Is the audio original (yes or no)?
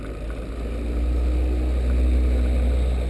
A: yes